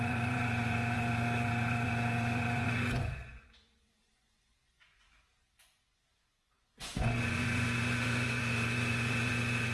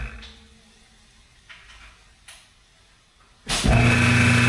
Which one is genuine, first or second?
second